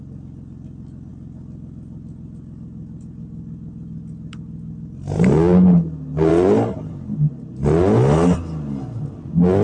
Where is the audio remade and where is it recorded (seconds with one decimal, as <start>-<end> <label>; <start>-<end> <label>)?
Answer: 0.0-9.6 recorded